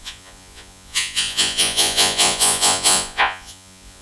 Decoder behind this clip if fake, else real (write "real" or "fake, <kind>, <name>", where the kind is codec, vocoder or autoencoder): fake, vocoder, Vocos